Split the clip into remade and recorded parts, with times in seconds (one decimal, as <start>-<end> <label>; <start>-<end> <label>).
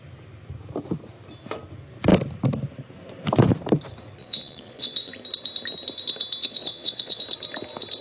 0.0-4.2 recorded; 4.2-5.1 remade; 5.1-6.4 recorded; 6.4-7.2 remade; 7.2-8.0 recorded